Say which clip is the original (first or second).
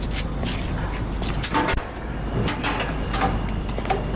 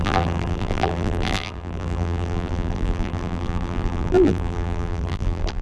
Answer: first